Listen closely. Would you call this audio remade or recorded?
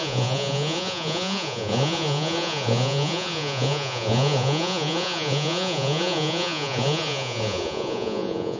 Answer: remade